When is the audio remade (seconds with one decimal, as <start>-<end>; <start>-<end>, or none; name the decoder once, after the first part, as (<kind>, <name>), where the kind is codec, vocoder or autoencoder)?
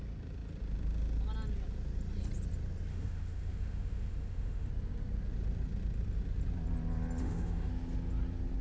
2.9-4.7 (autoencoder, DAC-VAE); 7.2-7.7